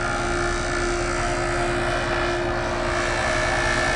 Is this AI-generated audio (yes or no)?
no